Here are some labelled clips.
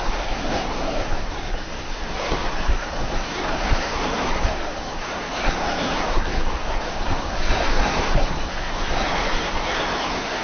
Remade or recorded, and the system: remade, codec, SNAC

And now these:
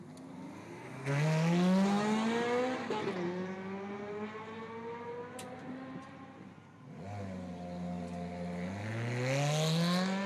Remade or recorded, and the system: recorded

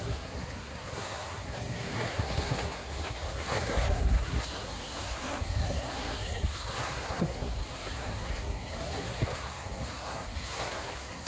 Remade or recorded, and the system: remade, codec, SNAC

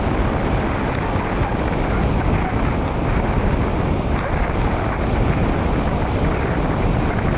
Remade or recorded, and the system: recorded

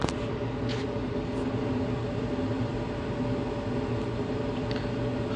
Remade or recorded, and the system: recorded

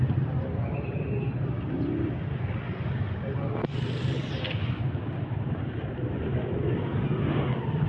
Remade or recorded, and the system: recorded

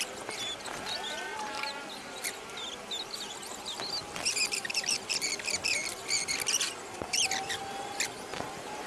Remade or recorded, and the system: recorded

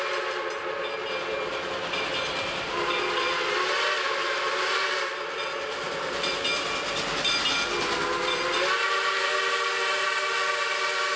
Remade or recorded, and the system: recorded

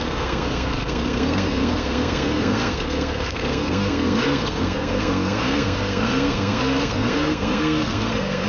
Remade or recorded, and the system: remade, codec, SNAC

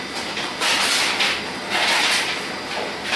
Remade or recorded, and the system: recorded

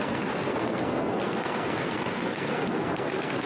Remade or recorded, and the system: remade, codec, SNAC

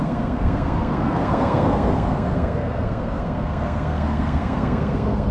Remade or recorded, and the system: remade, codec, SNAC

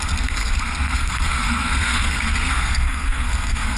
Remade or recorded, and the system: remade, codec, SNAC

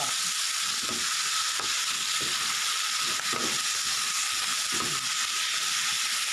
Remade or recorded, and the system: recorded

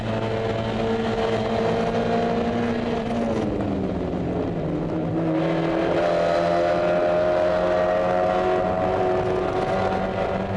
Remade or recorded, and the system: recorded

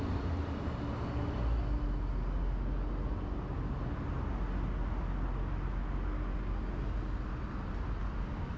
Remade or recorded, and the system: recorded